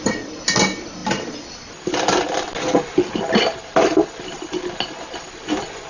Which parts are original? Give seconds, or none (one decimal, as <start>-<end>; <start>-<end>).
0.0-5.9